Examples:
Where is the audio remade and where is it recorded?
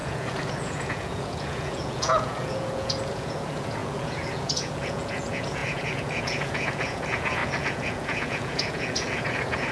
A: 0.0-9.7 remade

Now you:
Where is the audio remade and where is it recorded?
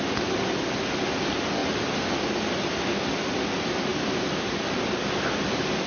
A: 0.0-5.9 recorded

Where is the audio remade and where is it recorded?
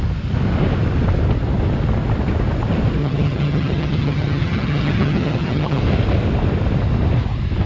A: 0.0-3.0 recorded; 3.0-5.8 remade; 5.8-7.7 recorded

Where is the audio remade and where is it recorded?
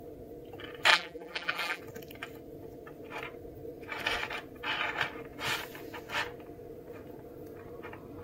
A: 0.0-0.9 recorded; 0.9-1.8 remade; 1.8-8.2 recorded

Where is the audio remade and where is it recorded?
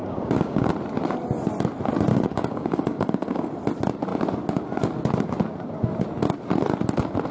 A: 0.0-0.7 remade; 0.7-2.1 recorded; 2.1-3.5 remade; 3.5-7.3 recorded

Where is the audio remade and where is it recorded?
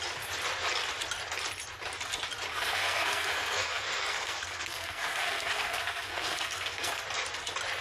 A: 0.0-2.5 recorded; 2.5-7.0 remade; 7.0-7.8 recorded